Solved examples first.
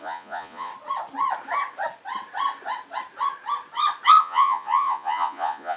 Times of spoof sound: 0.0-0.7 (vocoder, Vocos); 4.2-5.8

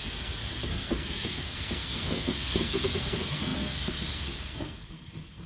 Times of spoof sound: 0.0-5.5 (codec, SNAC)